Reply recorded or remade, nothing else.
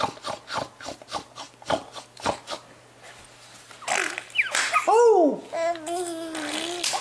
recorded